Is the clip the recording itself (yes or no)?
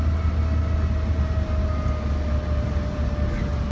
yes